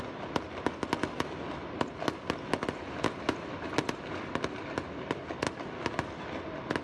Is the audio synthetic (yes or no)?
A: no